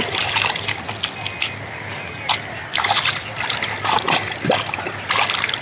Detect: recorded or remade recorded